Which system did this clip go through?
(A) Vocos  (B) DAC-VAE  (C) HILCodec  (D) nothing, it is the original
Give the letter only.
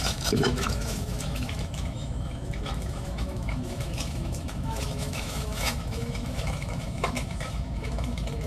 B